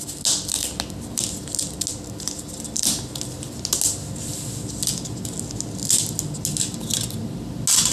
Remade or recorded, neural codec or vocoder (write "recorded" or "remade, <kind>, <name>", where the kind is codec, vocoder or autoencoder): recorded